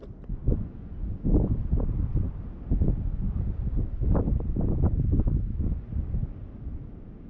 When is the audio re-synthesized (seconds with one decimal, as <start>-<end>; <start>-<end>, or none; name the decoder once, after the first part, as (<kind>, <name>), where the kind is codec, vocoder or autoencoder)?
0.4-1.0 (vocoder, Vocos)